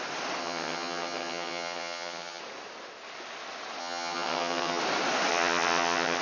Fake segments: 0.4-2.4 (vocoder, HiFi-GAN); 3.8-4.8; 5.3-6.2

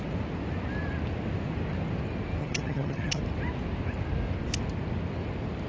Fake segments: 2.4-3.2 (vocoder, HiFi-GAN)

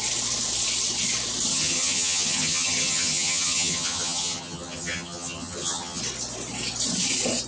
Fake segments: 1.5-6.0 (vocoder, HiFi-GAN)